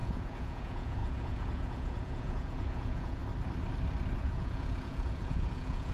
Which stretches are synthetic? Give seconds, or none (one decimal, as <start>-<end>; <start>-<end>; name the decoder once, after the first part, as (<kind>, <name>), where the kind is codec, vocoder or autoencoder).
0.0-3.2 (vocoder, Vocos); 4.2-5.9